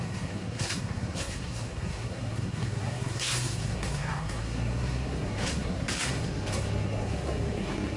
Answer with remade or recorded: remade